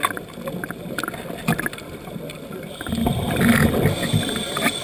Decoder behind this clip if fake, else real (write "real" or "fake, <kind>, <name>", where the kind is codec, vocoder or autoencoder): real